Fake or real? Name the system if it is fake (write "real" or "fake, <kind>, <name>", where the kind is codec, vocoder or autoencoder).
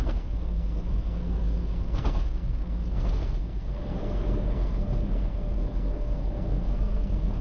fake, codec, SNAC